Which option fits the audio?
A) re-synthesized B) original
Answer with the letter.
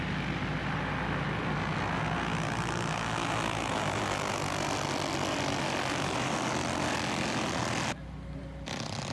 B